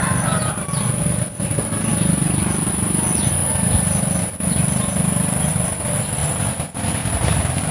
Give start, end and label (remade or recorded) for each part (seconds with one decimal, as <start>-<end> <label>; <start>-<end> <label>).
0.0-7.7 recorded